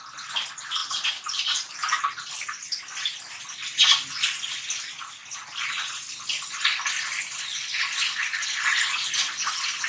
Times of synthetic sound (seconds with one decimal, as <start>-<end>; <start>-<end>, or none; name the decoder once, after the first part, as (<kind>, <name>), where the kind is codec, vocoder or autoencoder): 0.8-2.0 (vocoder, BigVGAN v2)